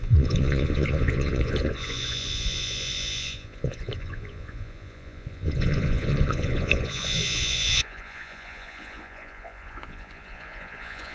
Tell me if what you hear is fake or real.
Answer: fake